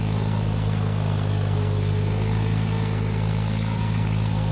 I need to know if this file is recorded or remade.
remade